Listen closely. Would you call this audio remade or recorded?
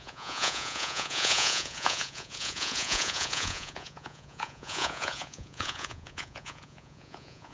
remade